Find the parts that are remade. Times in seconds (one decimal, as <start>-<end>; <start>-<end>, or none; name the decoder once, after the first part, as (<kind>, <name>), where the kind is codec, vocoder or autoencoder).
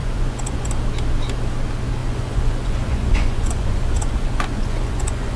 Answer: 0.0-0.7 (vocoder, Vocos); 2.0-5.4